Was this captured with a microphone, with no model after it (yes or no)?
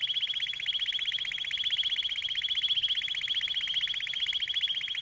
yes